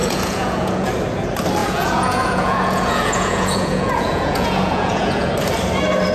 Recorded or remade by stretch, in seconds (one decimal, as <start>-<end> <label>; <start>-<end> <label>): 0.0-0.9 remade; 0.9-1.6 recorded; 1.6-5.3 remade; 5.3-6.1 recorded